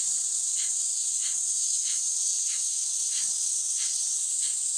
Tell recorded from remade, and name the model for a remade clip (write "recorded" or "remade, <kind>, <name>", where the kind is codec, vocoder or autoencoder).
recorded